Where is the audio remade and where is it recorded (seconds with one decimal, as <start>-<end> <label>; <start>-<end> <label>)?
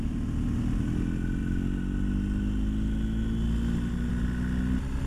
0.0-5.1 recorded